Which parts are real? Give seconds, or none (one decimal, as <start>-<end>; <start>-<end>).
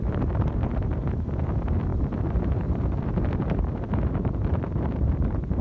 1.3-1.9